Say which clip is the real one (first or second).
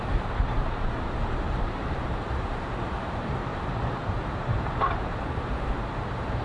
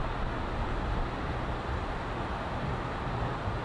second